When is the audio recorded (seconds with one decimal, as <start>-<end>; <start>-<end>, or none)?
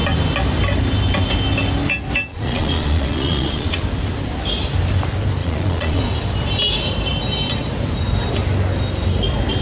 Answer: 0.0-2.3; 3.8-5.4; 6.0-9.6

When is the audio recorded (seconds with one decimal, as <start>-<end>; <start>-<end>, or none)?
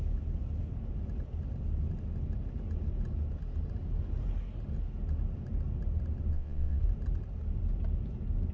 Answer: 0.0-6.3; 6.8-8.5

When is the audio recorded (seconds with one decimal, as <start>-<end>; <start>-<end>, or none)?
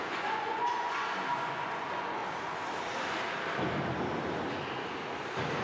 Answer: 2.2-5.6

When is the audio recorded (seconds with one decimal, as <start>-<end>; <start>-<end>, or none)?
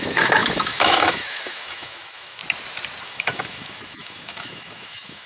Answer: 2.4-3.0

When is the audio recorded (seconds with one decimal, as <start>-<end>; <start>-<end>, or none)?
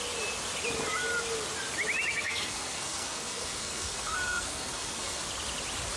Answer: 0.0-2.1; 5.2-6.0